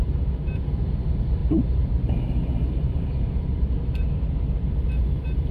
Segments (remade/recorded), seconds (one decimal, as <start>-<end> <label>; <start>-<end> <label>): 0.0-1.4 recorded; 1.4-4.7 remade; 4.7-5.5 recorded